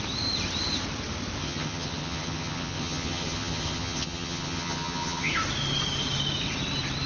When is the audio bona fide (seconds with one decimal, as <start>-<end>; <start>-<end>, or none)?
0.0-1.4; 5.3-7.1